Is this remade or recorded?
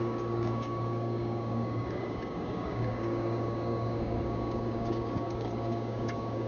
remade